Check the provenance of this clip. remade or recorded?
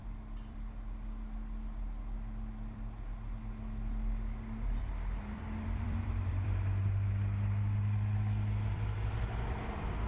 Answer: remade